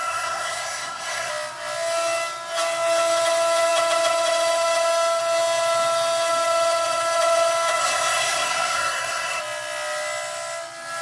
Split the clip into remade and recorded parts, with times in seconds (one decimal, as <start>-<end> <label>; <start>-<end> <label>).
0.0-1.3 remade; 1.3-7.8 recorded; 7.8-9.4 remade; 9.4-11.0 recorded